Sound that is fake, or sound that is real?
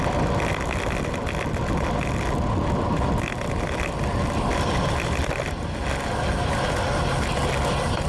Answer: real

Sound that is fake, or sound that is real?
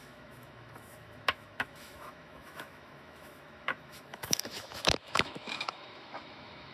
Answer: fake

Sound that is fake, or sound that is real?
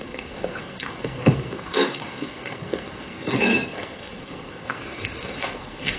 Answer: fake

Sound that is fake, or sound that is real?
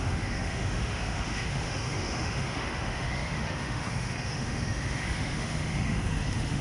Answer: fake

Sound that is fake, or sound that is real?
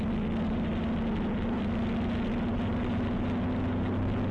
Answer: real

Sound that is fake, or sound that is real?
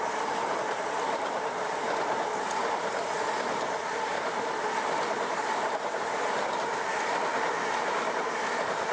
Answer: fake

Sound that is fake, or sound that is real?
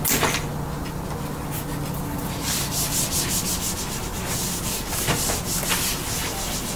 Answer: real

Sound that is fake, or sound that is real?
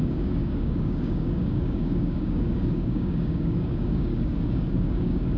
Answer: fake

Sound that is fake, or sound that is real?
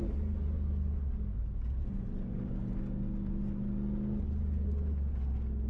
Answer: real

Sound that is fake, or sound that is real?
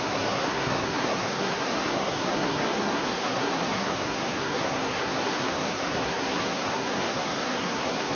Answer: fake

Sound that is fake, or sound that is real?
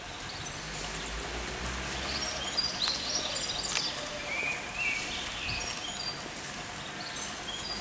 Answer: real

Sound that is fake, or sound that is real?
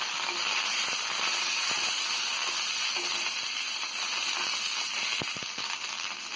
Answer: real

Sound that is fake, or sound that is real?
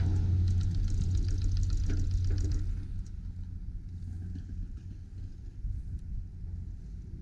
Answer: real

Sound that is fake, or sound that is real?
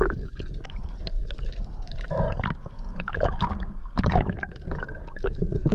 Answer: fake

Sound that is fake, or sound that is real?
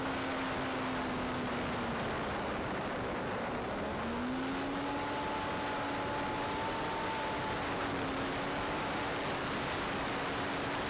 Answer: real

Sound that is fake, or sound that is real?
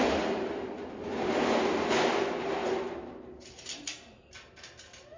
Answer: real